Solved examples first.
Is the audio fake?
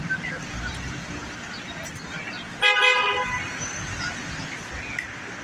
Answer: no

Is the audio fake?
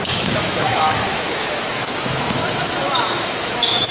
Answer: yes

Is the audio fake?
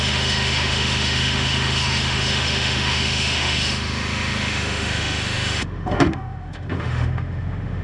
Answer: yes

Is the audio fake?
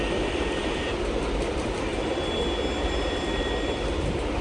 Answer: no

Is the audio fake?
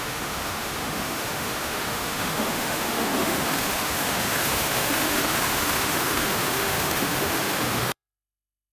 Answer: yes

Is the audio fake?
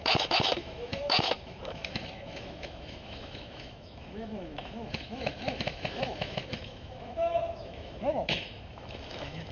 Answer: yes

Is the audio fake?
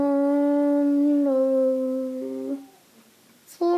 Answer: no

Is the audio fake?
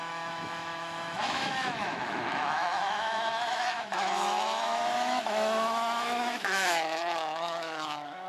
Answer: yes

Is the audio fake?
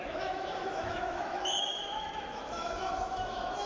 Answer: yes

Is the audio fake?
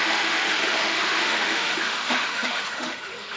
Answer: yes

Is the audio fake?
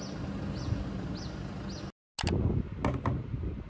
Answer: no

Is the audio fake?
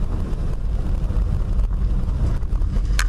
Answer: no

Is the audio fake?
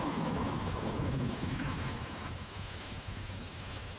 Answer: yes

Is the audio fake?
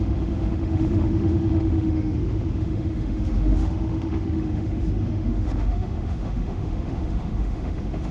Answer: yes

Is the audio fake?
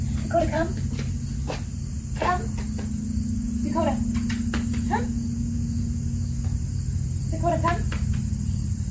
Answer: no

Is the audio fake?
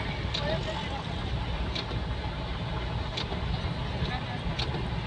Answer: no